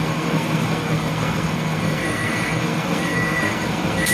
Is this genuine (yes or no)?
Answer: no